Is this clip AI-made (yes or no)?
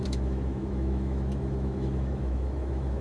yes